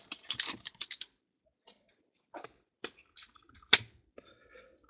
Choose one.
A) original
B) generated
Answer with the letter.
B